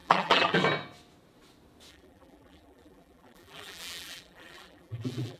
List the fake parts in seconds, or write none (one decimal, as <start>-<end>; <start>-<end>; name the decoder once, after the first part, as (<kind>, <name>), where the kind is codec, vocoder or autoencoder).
0.0-0.6 (vocoder, BigVGAN v2); 1.9-5.4